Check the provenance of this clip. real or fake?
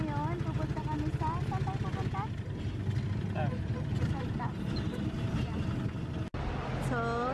real